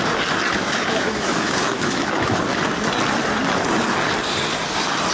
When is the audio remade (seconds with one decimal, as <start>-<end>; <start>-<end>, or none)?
0.5-2.4